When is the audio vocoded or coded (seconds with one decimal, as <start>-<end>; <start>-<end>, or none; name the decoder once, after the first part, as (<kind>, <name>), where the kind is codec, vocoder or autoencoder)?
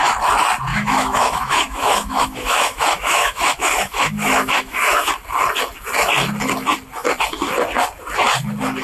0.7-5.1 (autoencoder, DAC-VAE)